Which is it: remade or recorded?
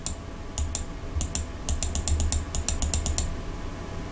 recorded